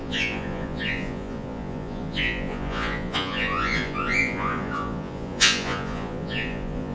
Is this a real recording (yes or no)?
no